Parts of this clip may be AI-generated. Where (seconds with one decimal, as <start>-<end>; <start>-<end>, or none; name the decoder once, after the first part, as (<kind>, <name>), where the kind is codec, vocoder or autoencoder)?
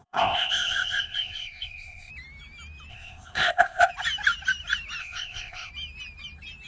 0.0-2.1 (codec, ZipCodec); 2.9-3.9; 5.0-5.7